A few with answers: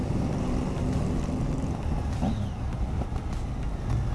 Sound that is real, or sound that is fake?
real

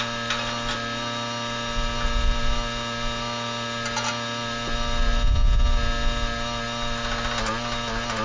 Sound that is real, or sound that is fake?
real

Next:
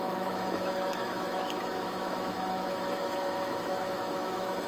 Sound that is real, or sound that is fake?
fake